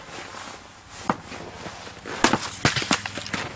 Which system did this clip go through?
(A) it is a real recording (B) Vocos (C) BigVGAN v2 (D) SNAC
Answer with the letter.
A